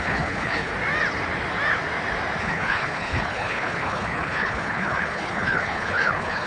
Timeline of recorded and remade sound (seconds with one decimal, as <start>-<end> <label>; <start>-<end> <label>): 0.0-0.7 remade; 0.7-2.4 recorded; 2.4-6.5 remade